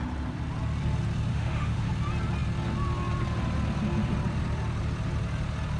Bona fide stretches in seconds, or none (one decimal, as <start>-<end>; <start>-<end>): 0.0-1.3; 1.9-5.8